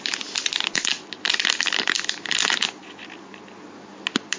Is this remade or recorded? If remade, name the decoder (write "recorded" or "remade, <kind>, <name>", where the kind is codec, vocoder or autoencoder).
recorded